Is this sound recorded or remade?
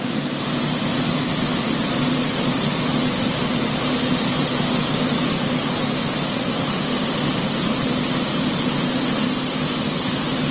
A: recorded